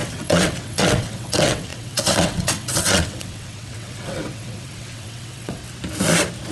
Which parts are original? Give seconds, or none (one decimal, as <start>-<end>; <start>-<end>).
5.6-6.5